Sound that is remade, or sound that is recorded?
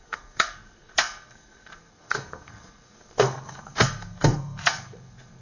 remade